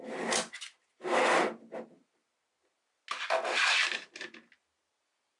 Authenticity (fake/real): real